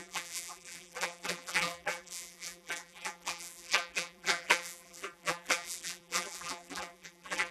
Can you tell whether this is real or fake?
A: fake